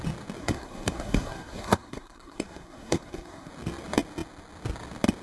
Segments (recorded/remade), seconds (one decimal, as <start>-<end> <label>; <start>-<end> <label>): 0.0-0.4 recorded; 0.4-3.5 remade; 3.5-5.2 recorded